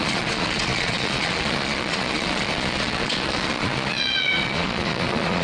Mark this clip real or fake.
fake